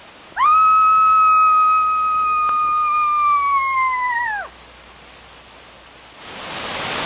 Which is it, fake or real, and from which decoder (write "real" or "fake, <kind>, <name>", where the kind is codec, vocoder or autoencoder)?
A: real